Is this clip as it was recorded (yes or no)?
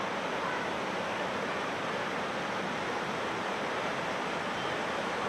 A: no